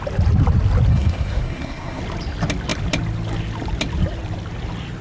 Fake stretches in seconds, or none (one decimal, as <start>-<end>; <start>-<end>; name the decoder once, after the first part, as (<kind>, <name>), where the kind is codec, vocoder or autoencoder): 0.9-2.0 (codec, SNAC)